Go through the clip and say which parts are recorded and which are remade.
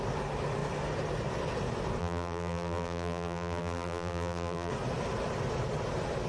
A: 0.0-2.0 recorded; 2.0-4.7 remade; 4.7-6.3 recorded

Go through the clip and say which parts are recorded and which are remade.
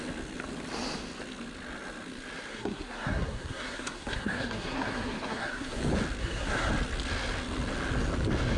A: 0.0-2.5 recorded; 2.5-5.8 remade; 5.8-6.2 recorded; 6.2-6.7 remade; 6.7-8.6 recorded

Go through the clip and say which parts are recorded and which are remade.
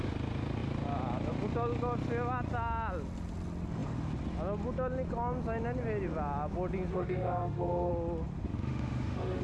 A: 0.0-6.9 recorded; 6.9-7.9 remade; 7.9-8.5 recorded; 8.5-9.4 remade